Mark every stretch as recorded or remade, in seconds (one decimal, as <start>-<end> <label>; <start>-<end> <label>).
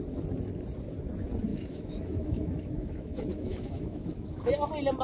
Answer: 0.0-1.5 recorded; 1.5-4.5 remade; 4.5-5.0 recorded